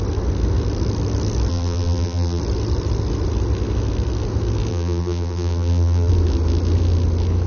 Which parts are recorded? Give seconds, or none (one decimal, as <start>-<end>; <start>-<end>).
0.0-1.5; 2.4-4.7; 6.1-7.5